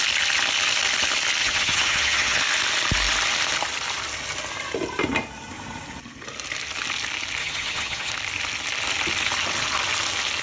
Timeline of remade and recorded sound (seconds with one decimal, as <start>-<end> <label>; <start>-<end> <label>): 0.0-1.4 recorded; 1.4-2.4 remade; 2.4-7.4 recorded; 7.4-8.1 remade; 8.1-10.4 recorded